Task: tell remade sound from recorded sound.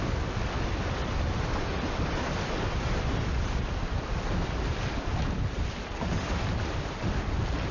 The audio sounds recorded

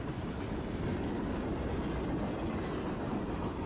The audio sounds recorded